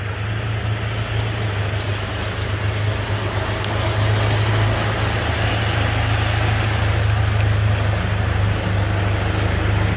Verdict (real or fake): real